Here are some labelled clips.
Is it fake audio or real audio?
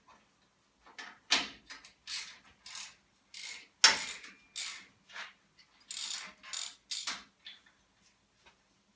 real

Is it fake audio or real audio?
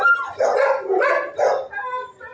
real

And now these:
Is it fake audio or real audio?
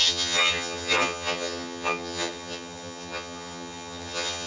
fake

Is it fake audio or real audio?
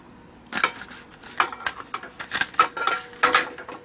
real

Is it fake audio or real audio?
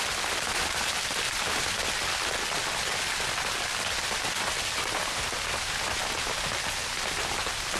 real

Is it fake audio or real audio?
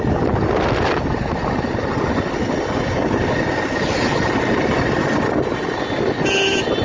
real